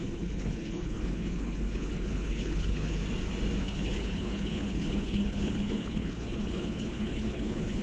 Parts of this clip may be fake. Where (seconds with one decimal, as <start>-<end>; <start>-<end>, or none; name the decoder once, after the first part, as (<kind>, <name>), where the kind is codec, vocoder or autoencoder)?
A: 0.0-3.0 (codec, HILCodec); 3.6-7.8